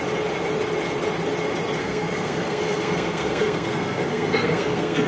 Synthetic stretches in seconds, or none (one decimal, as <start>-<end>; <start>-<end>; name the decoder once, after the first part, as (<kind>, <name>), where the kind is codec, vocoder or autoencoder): 1.8-5.1 (codec, SNAC)